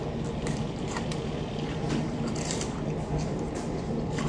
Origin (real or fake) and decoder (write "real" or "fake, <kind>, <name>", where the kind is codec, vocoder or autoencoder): fake, vocoder, BigVGAN v2